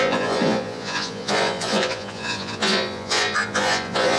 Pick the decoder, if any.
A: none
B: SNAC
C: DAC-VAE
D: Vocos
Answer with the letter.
D